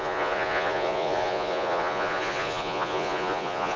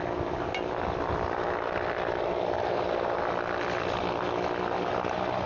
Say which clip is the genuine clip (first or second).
second